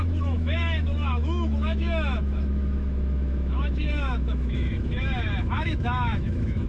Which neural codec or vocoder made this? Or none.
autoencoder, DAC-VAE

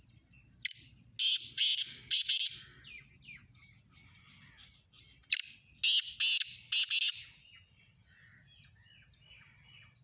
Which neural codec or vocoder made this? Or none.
none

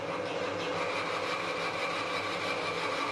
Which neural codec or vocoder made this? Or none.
none